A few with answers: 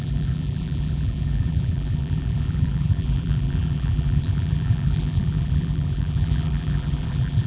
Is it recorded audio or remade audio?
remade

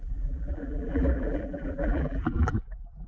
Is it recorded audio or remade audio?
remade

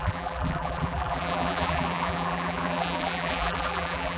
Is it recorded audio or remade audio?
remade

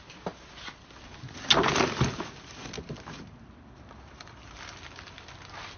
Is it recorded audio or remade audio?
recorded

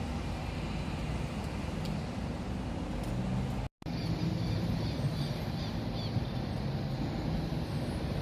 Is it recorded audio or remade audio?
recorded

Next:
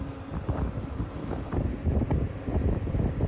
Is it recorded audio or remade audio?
remade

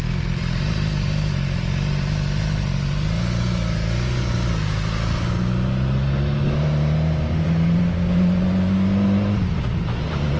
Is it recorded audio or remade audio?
recorded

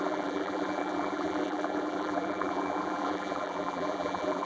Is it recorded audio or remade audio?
remade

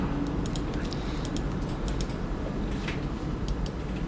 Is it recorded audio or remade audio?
recorded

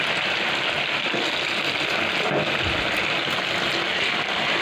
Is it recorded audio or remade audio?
recorded